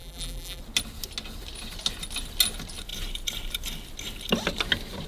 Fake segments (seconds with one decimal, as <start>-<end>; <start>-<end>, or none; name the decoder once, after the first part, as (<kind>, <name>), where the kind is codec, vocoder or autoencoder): 0.0-0.6 (vocoder, BigVGAN v2)

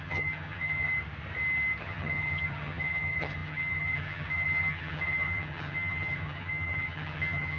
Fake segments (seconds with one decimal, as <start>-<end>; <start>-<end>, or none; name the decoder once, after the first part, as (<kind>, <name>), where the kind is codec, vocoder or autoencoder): 0.0-0.9 (vocoder, HiFi-GAN); 1.8-7.6